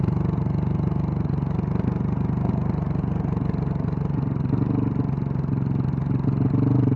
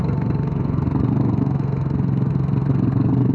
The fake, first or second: second